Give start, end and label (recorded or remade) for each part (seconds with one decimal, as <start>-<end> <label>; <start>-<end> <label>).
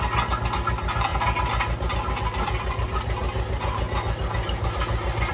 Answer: 0.0-5.3 recorded